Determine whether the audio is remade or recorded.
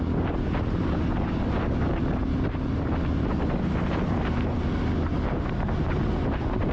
recorded